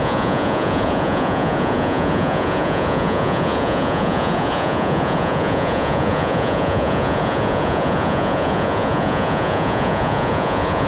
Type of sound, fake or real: fake